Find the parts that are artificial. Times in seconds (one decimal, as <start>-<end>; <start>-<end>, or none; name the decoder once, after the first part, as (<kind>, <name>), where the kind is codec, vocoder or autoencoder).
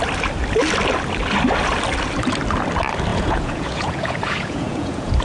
3.1-5.2 (vocoder, Vocos)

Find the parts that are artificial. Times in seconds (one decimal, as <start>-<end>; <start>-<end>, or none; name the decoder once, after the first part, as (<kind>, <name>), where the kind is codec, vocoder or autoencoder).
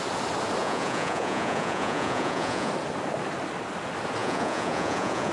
0.6-2.7 (vocoder, Vocos); 4.2-5.3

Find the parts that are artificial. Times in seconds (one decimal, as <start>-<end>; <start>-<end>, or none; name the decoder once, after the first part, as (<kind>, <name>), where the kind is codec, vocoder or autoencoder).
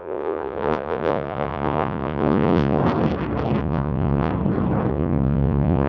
0.0-2.8 (vocoder, Vocos); 3.6-4.3; 4.9-5.9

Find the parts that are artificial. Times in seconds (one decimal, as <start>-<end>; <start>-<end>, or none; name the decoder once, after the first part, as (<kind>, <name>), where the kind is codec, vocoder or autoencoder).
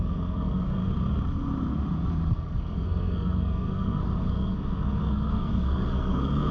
0.0-0.8 (codec, SNAC); 2.3-6.5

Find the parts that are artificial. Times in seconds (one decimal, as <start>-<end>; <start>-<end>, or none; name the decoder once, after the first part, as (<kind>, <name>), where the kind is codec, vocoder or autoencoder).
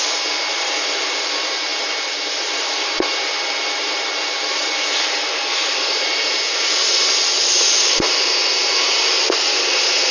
0.0-10.1 (vocoder, BigVGAN v2)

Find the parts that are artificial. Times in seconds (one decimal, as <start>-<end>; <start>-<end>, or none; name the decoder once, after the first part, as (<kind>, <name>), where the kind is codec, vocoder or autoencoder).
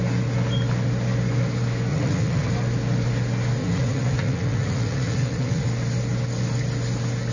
1.9-2.5 (vocoder, Vocos); 3.6-5.7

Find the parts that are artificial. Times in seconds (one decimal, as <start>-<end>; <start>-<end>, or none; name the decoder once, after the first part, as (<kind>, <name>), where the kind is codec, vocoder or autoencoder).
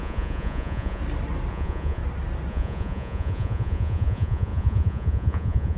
0.0-1.0 (vocoder, Vocos); 1.5-2.0; 2.5-5.8